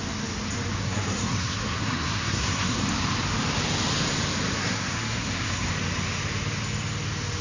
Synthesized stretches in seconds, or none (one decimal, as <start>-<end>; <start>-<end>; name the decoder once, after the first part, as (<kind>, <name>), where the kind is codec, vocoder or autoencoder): 0.8-2.8 (codec, SNAC); 4.6-5.7